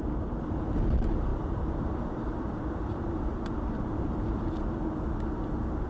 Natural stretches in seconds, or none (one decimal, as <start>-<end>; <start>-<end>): 0.0-1.3; 4.8-5.9